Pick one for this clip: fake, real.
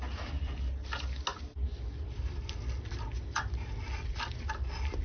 real